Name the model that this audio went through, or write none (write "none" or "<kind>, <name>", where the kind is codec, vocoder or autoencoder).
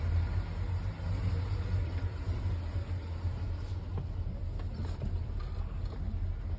none